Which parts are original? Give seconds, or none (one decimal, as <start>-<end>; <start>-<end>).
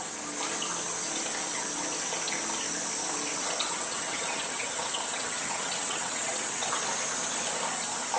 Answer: 0.0-3.3; 6.8-8.2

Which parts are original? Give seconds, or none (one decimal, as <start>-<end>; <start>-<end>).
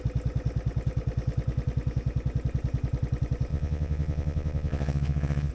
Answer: 0.0-3.5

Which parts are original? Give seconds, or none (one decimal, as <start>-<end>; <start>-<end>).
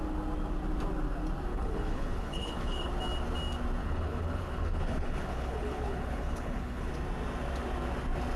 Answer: 0.0-1.5; 2.9-3.8; 6.9-8.4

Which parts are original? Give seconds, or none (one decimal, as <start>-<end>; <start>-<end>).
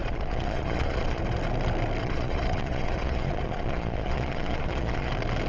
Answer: 1.2-2.0; 5.1-5.5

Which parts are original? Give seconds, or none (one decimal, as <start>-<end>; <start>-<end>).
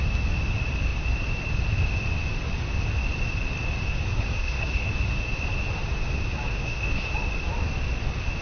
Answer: 0.0-4.1; 4.9-6.6; 7.1-8.4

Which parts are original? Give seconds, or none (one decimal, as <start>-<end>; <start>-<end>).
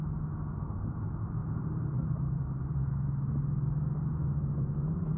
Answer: 0.0-1.4; 2.4-5.2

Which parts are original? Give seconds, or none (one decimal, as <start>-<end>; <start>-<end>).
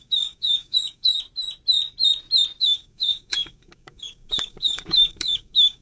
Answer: 1.1-2.6